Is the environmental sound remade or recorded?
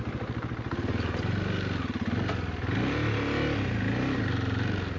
recorded